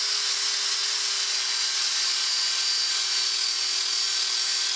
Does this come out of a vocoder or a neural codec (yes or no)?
no